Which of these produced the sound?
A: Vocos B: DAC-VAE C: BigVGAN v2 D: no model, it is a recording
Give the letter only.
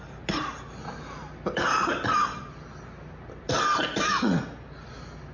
D